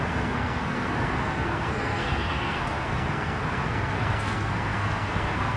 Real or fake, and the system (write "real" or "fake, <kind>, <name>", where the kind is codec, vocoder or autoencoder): fake, codec, SNAC